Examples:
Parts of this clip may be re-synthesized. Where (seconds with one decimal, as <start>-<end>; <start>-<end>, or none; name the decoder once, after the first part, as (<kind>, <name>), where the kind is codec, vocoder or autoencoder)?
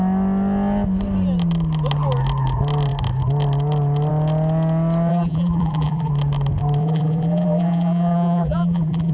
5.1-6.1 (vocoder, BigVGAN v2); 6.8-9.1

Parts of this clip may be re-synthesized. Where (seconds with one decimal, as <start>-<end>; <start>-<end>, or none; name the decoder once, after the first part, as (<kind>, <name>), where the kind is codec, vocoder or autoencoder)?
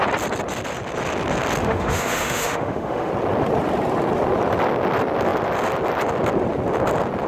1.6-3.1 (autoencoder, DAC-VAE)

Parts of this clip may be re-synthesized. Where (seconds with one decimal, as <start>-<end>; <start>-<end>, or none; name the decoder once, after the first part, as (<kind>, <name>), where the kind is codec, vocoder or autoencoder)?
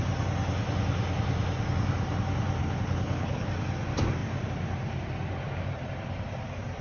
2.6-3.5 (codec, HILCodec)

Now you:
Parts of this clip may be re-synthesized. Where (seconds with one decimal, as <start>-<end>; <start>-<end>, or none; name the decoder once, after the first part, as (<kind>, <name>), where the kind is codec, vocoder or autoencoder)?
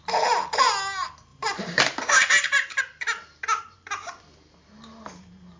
1.3-2.8 (vocoder, BigVGAN v2)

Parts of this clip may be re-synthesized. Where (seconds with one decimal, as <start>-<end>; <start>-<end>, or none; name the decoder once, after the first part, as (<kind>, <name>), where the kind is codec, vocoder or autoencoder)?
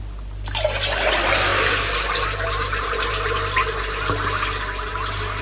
none